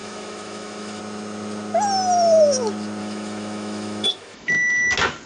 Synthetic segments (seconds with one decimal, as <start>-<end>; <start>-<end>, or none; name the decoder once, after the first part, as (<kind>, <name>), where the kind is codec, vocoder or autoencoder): 0.0-1.0 (autoencoder, DAC-VAE); 3.0-4.5